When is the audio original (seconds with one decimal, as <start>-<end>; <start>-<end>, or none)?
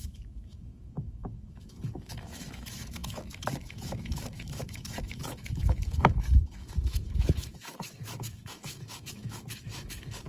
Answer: none